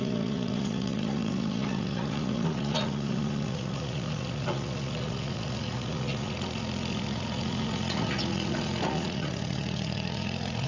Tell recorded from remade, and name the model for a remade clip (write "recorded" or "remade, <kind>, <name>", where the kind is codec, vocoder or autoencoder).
remade, vocoder, Vocos